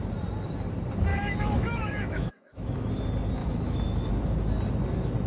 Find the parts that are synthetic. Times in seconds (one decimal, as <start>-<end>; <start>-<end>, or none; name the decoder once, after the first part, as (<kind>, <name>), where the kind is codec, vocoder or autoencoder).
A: 1.1-2.9 (autoencoder, DAC-VAE); 3.4-4.1